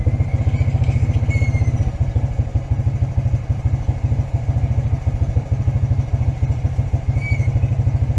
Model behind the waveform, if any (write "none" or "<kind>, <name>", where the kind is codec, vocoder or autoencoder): none